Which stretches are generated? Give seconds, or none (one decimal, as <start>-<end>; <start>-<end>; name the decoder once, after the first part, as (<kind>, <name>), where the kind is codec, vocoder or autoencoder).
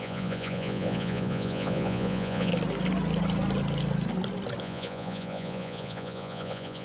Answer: 0.0-2.5 (vocoder, Vocos); 4.6-6.8